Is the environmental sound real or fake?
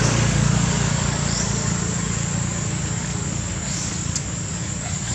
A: fake